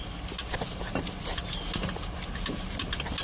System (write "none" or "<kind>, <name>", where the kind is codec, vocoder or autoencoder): none